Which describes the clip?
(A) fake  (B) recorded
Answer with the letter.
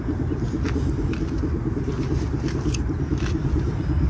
B